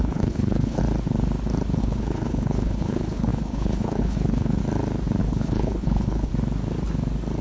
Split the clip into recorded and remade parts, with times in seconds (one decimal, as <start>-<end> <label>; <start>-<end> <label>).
0.0-0.8 remade; 0.8-1.8 recorded; 1.8-4.6 remade; 4.6-5.2 recorded; 5.2-6.3 remade; 6.3-7.4 recorded